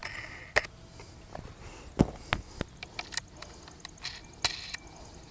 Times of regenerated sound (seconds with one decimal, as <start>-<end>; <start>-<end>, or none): none